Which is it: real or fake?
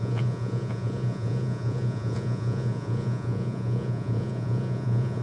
fake